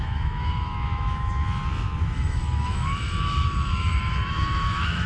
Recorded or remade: remade